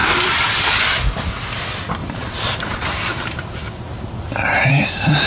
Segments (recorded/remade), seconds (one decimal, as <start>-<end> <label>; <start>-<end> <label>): 0.0-0.5 remade; 0.5-2.0 recorded; 2.0-4.7 remade; 4.7-5.3 recorded